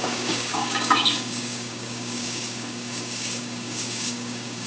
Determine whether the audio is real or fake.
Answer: fake